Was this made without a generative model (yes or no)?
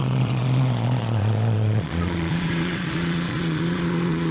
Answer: no